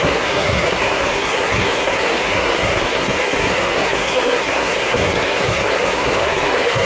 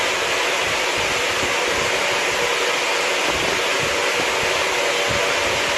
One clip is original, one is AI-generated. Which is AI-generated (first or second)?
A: first